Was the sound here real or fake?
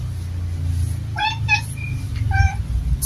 real